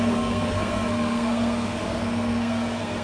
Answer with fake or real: fake